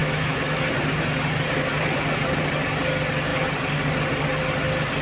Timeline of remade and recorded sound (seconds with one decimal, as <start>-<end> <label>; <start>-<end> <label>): 0.0-0.6 remade; 0.6-5.0 recorded